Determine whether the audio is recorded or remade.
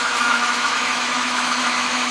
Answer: remade